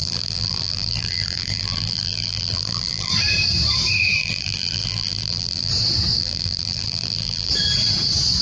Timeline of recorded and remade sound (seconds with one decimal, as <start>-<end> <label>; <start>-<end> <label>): 0.0-3.1 remade; 3.1-4.2 recorded; 4.2-5.7 remade; 5.7-6.2 recorded; 6.2-7.5 remade; 7.5-8.4 recorded